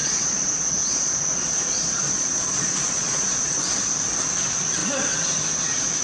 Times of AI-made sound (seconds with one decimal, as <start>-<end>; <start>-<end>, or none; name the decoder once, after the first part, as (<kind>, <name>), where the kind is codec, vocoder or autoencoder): 0.0-3.6 (vocoder, Vocos)